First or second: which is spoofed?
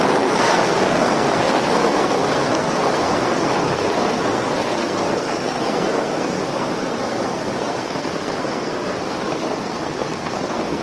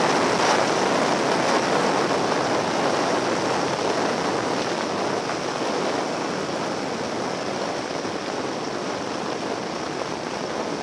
first